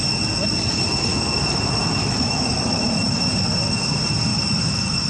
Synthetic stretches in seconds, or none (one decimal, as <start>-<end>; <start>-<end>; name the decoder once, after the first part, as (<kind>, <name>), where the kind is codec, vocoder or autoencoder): 2.0-2.8 (autoencoder, DAC-VAE); 4.3-5.1